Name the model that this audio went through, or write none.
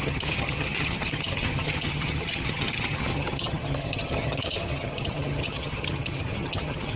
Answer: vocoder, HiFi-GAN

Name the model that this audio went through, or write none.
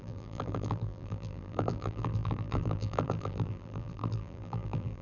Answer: vocoder, BigVGAN v2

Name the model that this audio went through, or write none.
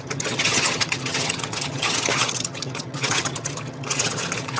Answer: vocoder, HiFi-GAN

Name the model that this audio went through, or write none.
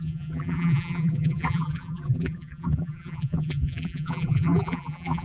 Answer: vocoder, BigVGAN v2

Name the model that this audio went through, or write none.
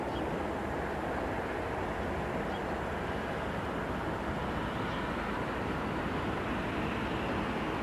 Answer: none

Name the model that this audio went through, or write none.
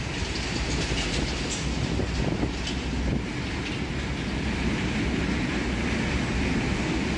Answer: none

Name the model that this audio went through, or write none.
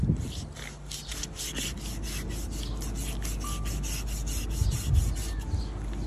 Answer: none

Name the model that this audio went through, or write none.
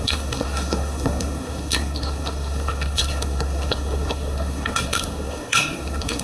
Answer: codec, SNAC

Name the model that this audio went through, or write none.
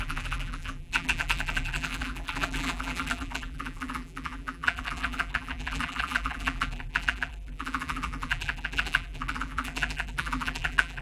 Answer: vocoder, BigVGAN v2